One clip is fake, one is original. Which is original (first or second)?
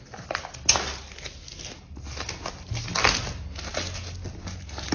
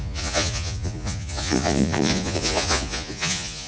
first